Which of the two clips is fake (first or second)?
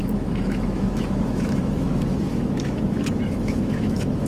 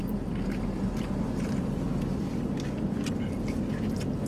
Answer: first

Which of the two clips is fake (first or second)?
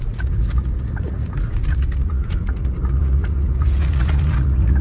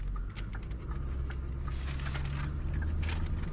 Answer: first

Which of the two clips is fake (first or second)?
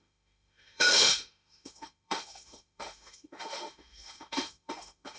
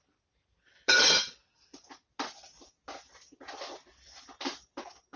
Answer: first